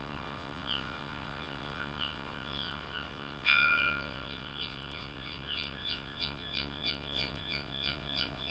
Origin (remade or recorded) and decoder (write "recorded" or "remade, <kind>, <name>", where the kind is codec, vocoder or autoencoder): remade, vocoder, WaveNeXt